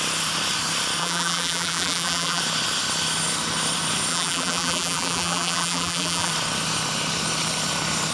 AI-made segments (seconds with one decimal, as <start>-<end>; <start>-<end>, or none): 1.0-2.4; 4.1-6.3